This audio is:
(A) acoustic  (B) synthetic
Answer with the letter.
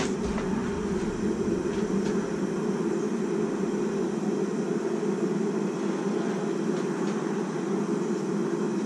A